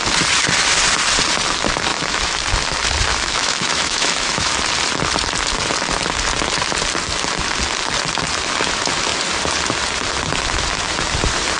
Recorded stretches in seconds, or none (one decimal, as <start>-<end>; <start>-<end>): 0.0-1.9; 2.4-3.1; 4.5-11.6